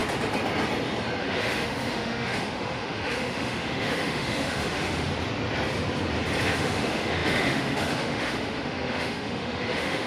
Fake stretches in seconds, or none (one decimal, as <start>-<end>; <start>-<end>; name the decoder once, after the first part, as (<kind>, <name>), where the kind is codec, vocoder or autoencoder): 1.2-5.1 (autoencoder, DAC-VAE); 6.4-10.1